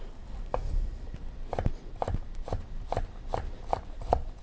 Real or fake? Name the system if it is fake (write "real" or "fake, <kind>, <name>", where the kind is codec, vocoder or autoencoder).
real